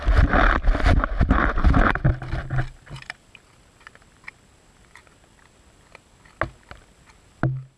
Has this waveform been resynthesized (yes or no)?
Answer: no